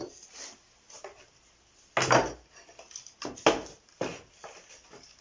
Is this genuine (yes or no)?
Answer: yes